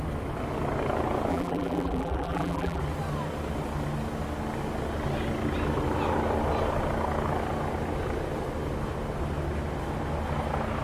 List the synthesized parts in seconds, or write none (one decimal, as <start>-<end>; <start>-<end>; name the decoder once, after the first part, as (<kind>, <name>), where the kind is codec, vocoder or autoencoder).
1.3-2.8 (vocoder, BigVGAN v2)